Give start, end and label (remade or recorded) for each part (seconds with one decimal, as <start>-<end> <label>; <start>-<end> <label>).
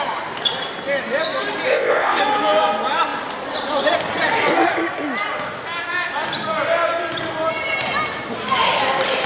0.0-1.7 recorded; 1.7-2.2 remade; 2.2-9.3 recorded